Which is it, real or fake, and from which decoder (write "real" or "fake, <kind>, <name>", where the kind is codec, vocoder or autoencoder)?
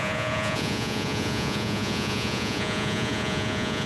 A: fake, vocoder, Vocos